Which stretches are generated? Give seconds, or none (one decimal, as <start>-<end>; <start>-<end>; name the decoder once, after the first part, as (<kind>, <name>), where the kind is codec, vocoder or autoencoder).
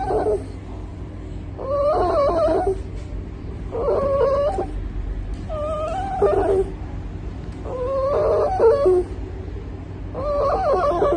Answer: 0.9-4.0 (vocoder, BigVGAN v2)